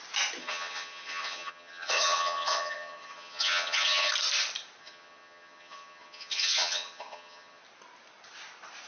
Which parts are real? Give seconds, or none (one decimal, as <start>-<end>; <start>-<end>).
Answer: 0.0-0.4; 4.1-4.8; 7.6-8.9